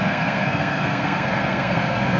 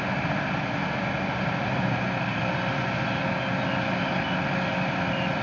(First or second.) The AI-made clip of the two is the first